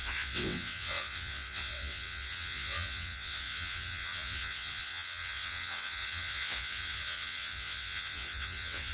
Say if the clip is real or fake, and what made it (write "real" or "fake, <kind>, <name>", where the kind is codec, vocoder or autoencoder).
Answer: fake, vocoder, WaveNeXt